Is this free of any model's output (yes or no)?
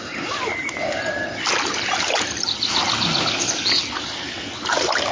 yes